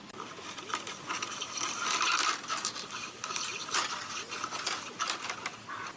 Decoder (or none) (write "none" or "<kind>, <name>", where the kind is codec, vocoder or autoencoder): none